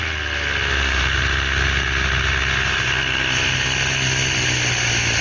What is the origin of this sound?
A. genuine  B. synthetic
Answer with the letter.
A